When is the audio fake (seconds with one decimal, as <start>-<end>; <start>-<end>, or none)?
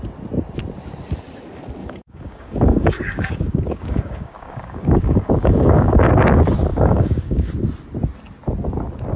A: 1.8-6.1; 6.7-7.5